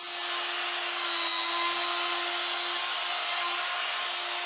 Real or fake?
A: real